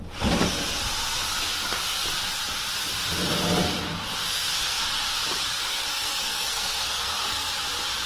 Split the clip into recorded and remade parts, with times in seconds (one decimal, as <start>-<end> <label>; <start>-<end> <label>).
0.0-4.2 recorded; 4.2-4.8 remade; 4.8-5.6 recorded; 5.6-7.5 remade; 7.5-8.1 recorded